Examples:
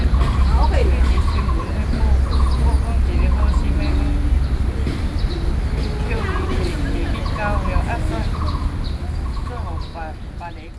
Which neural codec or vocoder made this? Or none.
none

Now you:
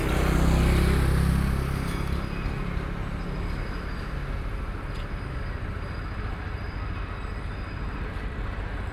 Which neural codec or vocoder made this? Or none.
none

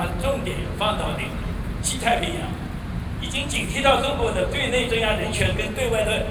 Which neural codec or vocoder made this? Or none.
vocoder, BigVGAN v2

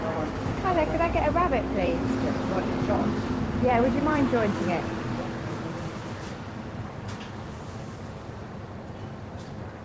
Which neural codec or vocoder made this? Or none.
vocoder, BigVGAN v2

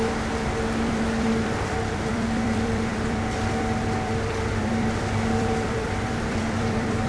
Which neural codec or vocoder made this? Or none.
vocoder, BigVGAN v2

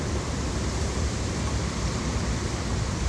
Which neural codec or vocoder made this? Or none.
vocoder, BigVGAN v2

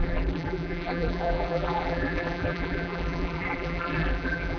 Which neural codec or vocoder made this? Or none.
vocoder, BigVGAN v2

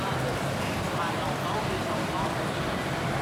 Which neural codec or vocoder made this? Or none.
vocoder, BigVGAN v2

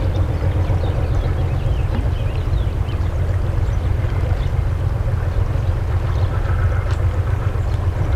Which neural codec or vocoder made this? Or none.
none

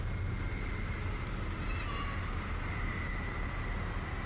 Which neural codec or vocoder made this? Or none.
none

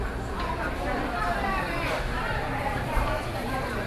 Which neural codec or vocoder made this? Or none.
vocoder, BigVGAN v2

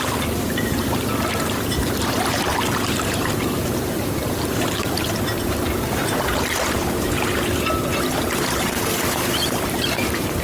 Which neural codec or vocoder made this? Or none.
vocoder, BigVGAN v2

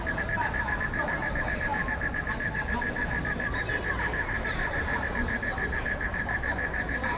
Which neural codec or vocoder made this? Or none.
vocoder, BigVGAN v2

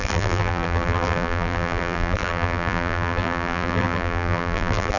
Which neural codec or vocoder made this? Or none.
vocoder, BigVGAN v2